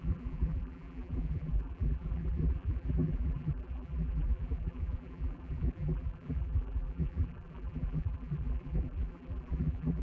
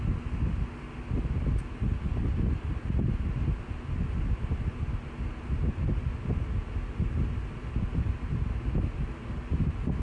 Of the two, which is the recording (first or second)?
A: second